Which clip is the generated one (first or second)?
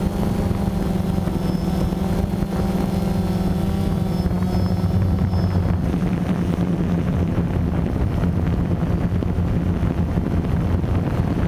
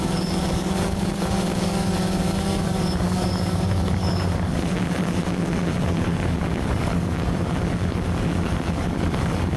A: second